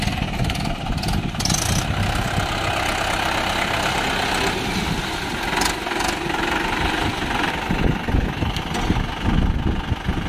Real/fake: real